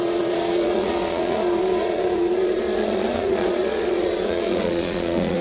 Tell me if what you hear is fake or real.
fake